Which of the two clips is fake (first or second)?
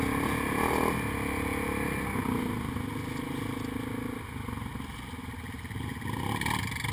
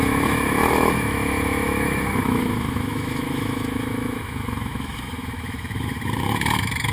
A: second